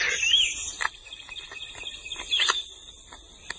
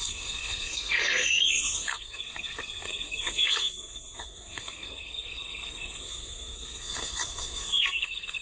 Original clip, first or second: first